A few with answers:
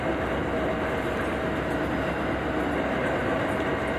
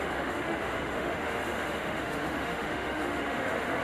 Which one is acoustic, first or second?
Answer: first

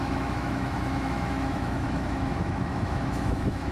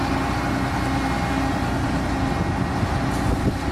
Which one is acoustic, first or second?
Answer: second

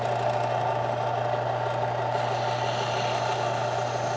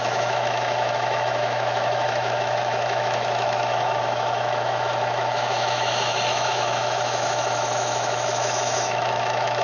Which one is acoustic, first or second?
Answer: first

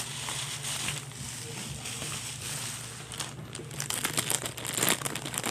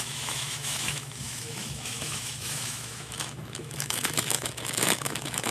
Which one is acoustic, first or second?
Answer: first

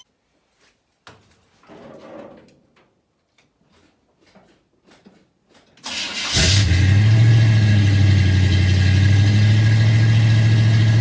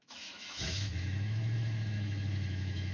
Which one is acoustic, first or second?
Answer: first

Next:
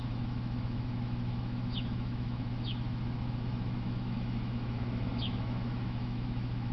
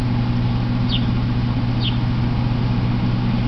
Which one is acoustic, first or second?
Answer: second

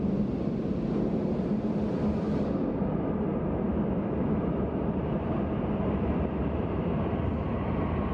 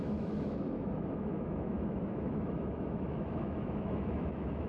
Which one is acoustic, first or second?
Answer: first